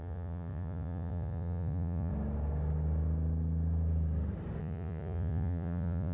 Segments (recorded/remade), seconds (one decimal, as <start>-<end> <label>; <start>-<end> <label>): 0.0-2.1 remade; 2.1-4.6 recorded; 4.6-6.1 remade